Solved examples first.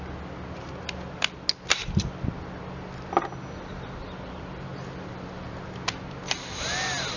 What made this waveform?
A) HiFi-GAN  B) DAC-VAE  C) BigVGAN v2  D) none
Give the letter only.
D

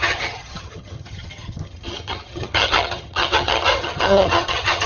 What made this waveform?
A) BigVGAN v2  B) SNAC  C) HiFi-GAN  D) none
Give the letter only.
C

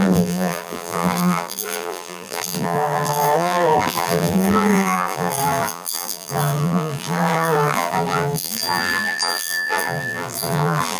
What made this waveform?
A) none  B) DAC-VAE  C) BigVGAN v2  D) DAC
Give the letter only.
C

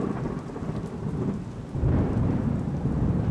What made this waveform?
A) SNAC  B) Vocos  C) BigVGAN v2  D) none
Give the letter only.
C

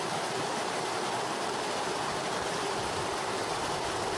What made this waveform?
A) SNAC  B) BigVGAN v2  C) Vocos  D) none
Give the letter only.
D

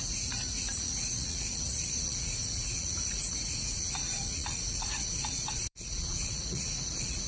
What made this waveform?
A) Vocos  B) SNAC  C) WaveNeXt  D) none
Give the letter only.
A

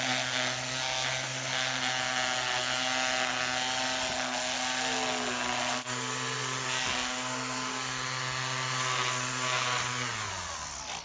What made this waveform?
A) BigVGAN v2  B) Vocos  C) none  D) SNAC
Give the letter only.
C